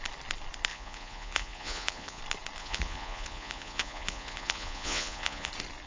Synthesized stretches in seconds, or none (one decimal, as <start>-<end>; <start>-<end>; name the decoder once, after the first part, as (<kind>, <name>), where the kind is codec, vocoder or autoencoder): 0.7-2.2 (vocoder, Vocos); 2.6-5.5